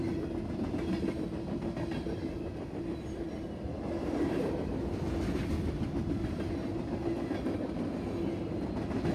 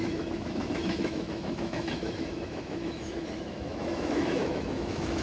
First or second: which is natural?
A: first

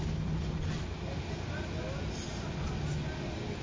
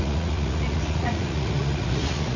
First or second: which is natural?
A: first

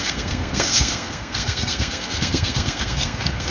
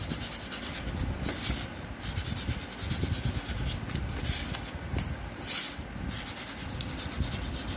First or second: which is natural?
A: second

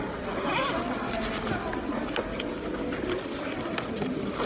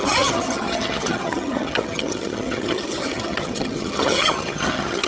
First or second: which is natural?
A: first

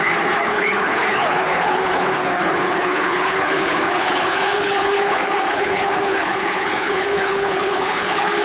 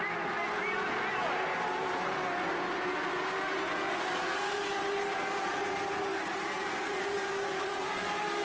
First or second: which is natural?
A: second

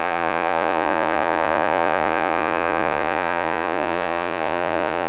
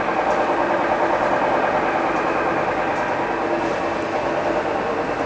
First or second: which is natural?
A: second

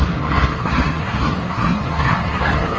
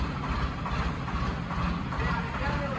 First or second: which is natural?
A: second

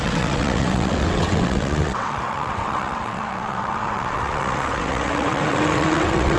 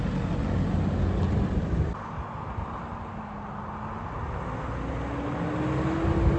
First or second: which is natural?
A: second